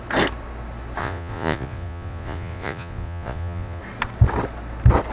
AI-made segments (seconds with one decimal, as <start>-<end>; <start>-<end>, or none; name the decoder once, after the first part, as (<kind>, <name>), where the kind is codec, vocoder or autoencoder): 1.0-3.8 (vocoder, Vocos)